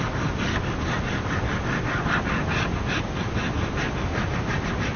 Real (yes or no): yes